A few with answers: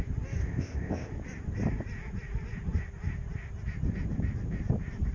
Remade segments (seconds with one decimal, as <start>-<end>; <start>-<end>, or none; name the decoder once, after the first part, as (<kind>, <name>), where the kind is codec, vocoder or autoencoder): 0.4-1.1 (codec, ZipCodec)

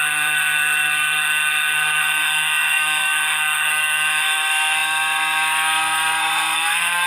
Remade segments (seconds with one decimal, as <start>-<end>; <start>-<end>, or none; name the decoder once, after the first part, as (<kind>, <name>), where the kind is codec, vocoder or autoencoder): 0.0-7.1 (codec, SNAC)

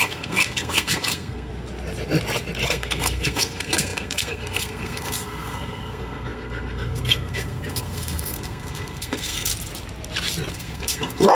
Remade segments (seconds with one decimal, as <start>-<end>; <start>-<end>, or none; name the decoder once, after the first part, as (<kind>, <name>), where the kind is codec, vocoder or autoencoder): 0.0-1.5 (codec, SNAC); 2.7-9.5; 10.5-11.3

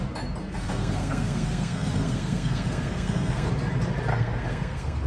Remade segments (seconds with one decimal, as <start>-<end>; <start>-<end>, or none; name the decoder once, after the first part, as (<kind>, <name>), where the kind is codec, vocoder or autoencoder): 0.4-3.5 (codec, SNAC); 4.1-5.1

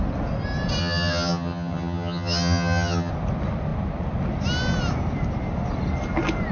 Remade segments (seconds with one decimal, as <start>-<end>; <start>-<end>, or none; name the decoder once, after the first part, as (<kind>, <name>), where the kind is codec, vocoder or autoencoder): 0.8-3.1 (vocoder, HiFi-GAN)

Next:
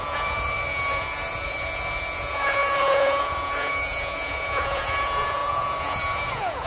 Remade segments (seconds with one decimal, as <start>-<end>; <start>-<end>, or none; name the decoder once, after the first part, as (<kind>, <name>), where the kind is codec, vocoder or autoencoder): 0.0-6.7 (vocoder, Vocos)

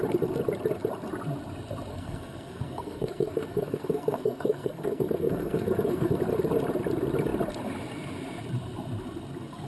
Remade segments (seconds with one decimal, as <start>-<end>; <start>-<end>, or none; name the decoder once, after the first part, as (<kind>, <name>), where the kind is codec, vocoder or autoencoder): 1.9-6.2 (codec, SNAC)

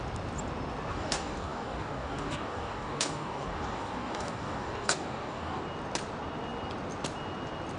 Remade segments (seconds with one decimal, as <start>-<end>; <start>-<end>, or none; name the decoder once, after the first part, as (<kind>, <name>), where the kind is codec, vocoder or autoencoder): 0.9-5.6 (codec, DAC)